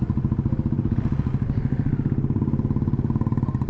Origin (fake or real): real